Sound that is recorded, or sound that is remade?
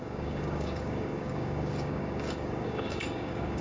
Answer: remade